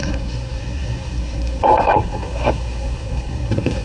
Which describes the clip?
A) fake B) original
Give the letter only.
A